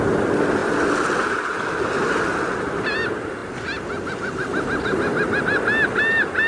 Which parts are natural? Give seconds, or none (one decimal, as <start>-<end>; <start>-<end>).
0.0-6.5